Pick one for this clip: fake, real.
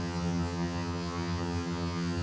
fake